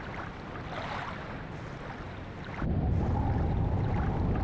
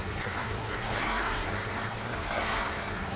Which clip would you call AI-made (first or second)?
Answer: second